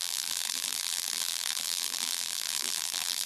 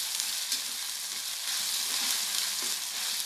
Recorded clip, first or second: second